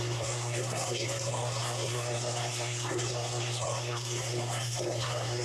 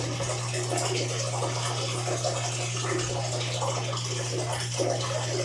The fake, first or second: first